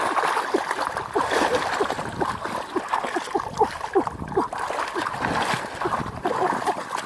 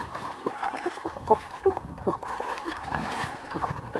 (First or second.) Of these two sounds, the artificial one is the second